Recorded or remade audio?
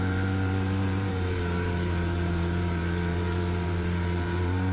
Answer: remade